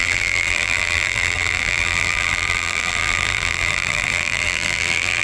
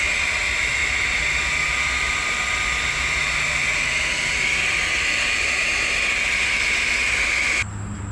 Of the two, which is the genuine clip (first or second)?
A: second